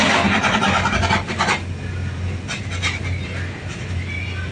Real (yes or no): yes